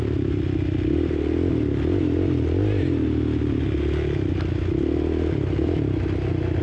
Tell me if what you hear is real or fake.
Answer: real